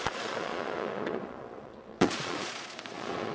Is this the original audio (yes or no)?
no